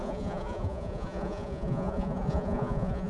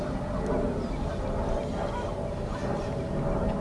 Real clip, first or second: second